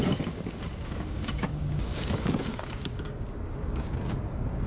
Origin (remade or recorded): remade